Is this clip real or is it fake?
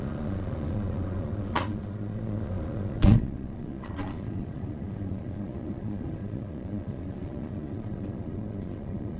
fake